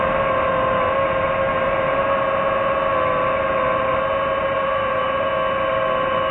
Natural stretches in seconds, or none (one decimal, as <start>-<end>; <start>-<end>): 0.0-4.4; 5.3-6.3